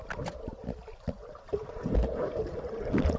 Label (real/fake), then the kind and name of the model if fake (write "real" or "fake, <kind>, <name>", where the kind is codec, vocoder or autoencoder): real